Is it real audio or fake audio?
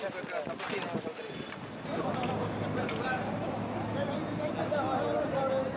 real